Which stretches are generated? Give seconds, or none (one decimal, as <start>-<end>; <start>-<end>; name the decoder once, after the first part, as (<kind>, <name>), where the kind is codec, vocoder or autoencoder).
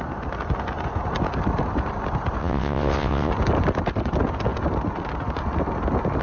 2.4-3.3 (vocoder, WaveNeXt)